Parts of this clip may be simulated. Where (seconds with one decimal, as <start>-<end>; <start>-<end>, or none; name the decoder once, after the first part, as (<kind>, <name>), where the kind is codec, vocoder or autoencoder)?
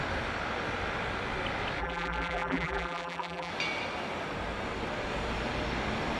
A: 1.8-3.5 (vocoder, BigVGAN v2)